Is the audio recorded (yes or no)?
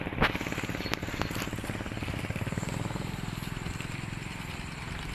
yes